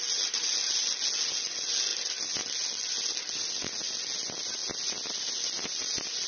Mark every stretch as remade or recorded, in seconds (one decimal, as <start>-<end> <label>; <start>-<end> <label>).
0.0-6.3 recorded